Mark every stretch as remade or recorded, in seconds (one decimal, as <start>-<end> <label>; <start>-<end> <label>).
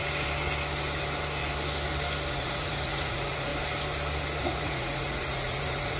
0.0-2.3 recorded; 2.3-3.5 remade; 3.5-4.4 recorded; 4.4-6.0 remade